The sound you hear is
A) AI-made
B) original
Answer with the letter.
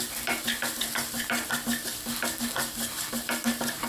B